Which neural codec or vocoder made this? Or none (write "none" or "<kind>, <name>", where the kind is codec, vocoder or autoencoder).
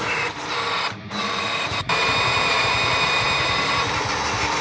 vocoder, BigVGAN v2